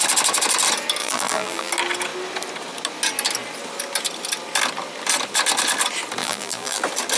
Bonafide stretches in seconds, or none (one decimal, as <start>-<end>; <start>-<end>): 0.0-1.0; 1.7-6.2; 6.8-7.2